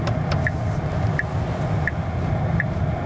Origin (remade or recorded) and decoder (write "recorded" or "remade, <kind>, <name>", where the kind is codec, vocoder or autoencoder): recorded